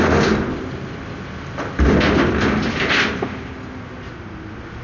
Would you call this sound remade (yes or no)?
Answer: no